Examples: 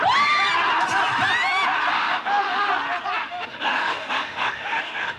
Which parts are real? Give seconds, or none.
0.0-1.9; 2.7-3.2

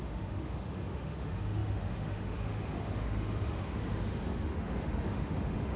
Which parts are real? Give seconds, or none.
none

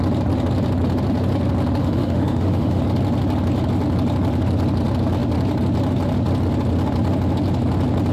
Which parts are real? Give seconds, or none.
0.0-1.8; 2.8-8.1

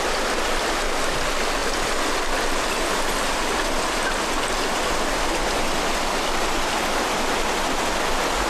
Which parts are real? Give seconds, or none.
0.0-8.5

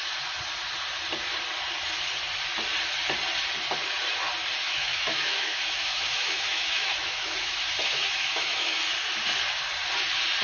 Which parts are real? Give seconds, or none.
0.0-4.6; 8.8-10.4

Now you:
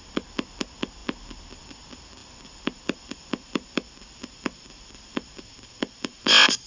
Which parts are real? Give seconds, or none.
0.0-6.7